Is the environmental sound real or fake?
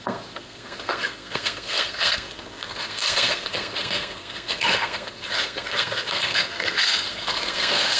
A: fake